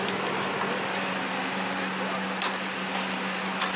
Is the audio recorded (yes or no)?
yes